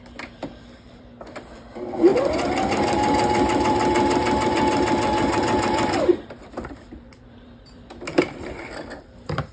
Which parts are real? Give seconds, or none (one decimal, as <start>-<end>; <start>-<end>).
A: 4.2-5.4